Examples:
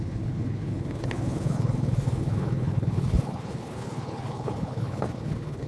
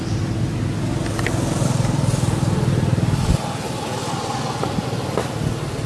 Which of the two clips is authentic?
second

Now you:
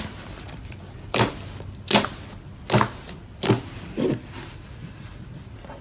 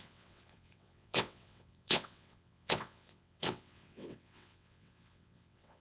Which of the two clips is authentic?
first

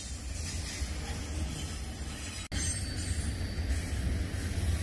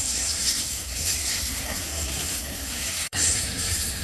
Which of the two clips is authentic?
first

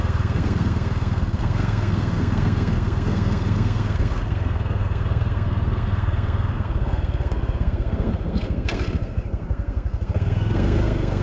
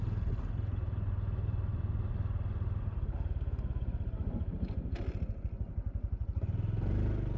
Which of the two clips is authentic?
second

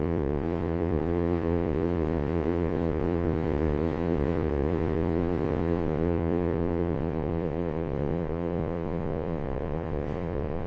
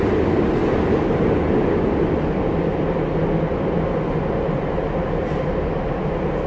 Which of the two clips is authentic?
second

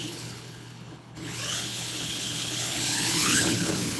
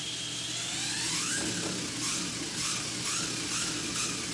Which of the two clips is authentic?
second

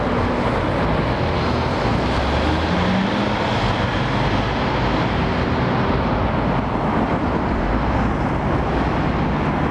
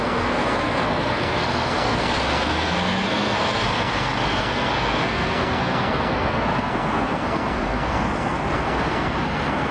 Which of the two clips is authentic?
first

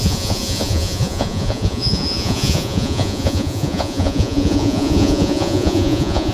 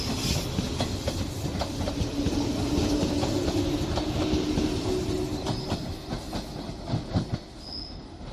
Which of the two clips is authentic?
second